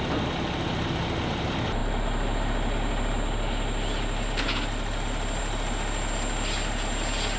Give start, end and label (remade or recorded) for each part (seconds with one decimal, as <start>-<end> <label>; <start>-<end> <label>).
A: 0.0-7.4 recorded